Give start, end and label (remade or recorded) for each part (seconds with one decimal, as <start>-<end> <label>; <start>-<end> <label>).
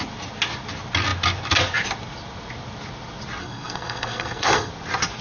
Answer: 0.0-3.4 recorded; 3.4-4.7 remade; 4.7-5.2 recorded